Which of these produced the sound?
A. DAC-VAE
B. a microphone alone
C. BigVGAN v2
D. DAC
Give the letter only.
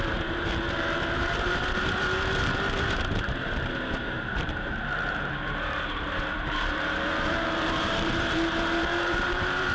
C